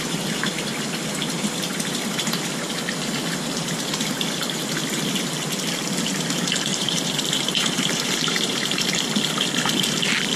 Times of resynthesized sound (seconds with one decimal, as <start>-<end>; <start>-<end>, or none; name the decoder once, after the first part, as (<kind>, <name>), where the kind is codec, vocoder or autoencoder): 6.7-8.8 (vocoder, BigVGAN v2)